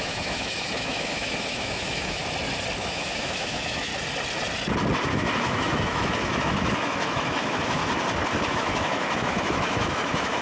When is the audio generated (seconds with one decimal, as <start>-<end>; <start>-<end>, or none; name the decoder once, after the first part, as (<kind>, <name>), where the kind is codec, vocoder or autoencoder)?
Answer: 0.0-2.2 (autoencoder, DAC-VAE); 2.8-3.9; 5.1-7.8; 8.5-10.4